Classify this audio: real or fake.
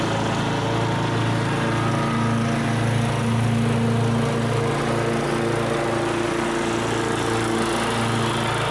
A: real